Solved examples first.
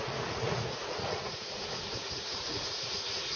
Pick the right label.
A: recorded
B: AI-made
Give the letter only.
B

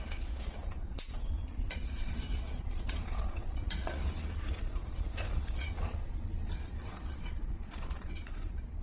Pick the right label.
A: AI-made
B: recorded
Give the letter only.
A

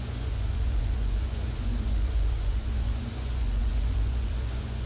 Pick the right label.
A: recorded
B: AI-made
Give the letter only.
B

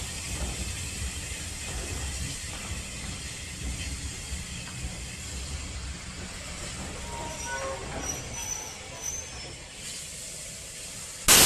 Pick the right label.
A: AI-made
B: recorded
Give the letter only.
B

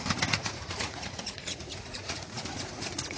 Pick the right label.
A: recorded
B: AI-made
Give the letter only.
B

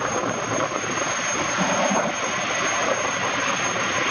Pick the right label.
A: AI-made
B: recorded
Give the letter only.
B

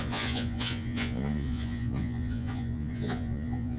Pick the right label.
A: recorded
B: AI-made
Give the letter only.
B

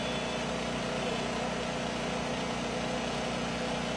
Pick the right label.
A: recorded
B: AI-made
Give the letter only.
A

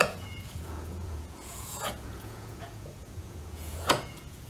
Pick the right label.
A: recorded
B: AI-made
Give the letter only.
B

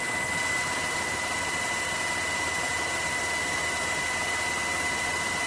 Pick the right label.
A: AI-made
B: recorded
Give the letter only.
B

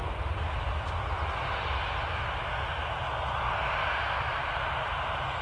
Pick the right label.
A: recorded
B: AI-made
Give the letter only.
A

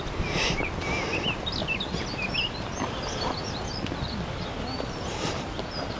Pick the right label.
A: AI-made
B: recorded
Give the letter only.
B